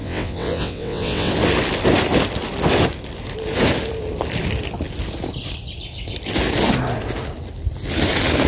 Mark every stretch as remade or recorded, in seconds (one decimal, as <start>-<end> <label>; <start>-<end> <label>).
0.0-1.3 remade; 1.3-8.5 recorded